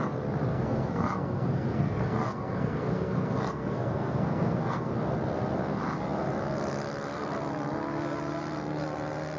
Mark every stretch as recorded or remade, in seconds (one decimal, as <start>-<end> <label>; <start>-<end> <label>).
0.0-0.5 recorded; 0.5-4.9 remade; 4.9-9.4 recorded